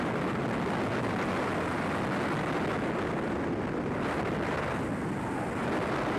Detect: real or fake real